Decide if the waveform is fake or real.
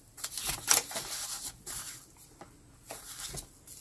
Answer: real